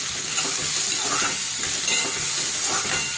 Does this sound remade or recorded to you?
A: recorded